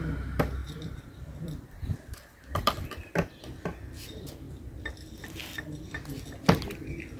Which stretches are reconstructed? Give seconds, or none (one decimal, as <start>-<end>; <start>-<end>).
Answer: 0.6-4.9

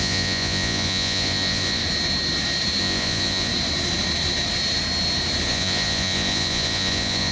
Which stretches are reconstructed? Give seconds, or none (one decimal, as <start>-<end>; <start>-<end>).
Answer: 0.0-1.8; 2.8-3.5; 5.5-7.3

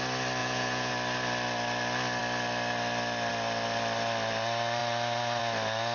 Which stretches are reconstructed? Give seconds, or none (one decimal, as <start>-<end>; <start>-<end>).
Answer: 0.4-0.9

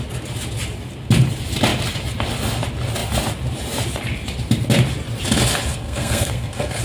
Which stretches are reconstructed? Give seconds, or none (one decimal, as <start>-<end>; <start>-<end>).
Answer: 5.7-6.8

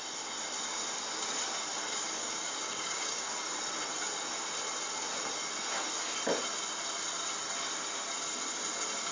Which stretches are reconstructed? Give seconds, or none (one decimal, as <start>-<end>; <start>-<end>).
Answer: 2.2-3.3